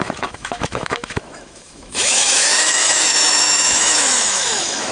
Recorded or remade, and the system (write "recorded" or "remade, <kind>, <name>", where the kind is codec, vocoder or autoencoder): remade, autoencoder, DAC-VAE